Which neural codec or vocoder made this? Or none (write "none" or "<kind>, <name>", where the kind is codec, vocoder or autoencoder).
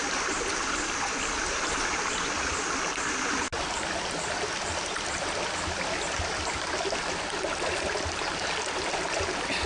none